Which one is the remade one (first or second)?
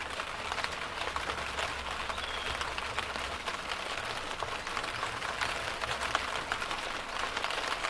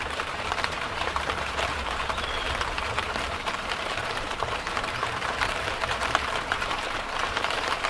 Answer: second